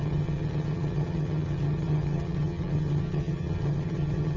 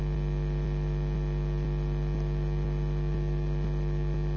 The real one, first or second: second